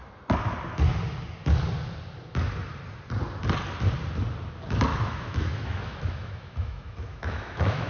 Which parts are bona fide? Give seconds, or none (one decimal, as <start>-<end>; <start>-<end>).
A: 0.0-4.9